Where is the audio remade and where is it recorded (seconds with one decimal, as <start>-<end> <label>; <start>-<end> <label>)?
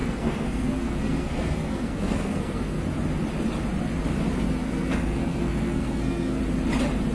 0.0-2.8 remade; 2.8-4.6 recorded; 4.6-6.4 remade; 6.4-7.1 recorded